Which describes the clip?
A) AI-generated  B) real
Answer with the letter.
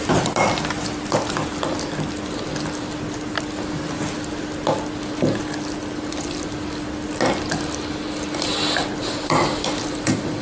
B